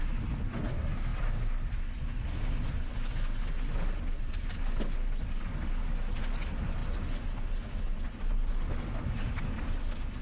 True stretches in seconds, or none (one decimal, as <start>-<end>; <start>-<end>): 0.0-10.2